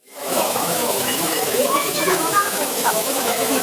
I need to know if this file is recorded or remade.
remade